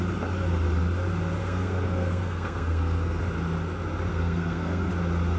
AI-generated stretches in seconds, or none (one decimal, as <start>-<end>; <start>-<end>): 1.4-3.2; 4.1-4.9